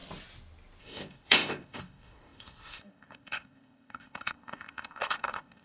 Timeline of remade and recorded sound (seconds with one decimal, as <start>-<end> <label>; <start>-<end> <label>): 0.0-0.8 recorded; 0.8-5.6 remade